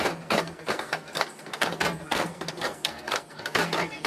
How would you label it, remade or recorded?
remade